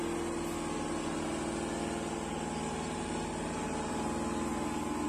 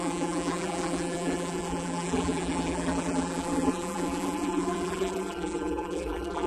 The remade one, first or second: second